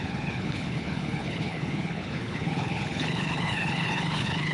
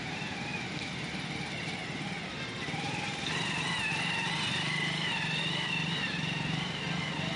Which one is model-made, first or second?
first